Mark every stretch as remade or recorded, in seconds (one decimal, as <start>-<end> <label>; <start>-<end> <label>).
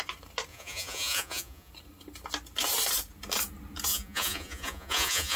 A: 0.0-0.5 recorded; 0.5-1.7 remade; 1.7-3.9 recorded; 3.9-5.4 remade